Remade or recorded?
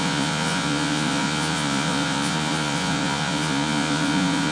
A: remade